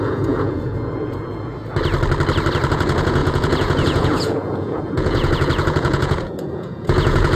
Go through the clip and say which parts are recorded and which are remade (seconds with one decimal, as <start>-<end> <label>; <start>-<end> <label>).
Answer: 0.0-1.5 remade; 1.5-2.7 recorded; 2.7-7.4 remade